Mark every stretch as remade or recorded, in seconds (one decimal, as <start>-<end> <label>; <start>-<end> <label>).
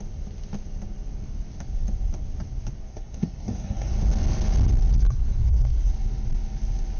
0.0-2.9 recorded; 2.9-3.9 remade; 3.9-5.0 recorded; 5.0-5.9 remade; 5.9-7.0 recorded